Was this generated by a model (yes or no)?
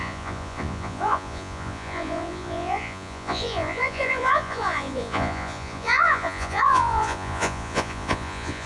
yes